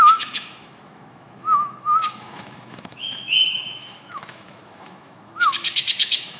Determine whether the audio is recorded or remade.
remade